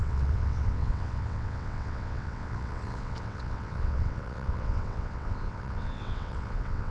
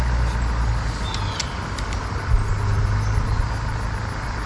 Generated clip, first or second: first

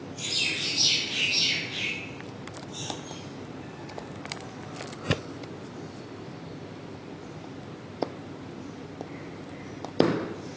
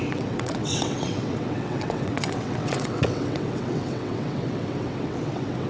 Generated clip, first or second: second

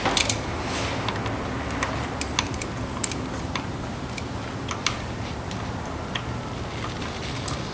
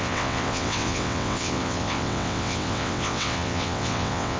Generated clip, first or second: second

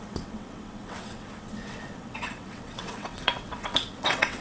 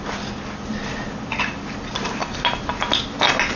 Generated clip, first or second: first